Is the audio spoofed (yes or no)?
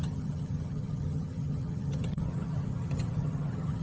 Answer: yes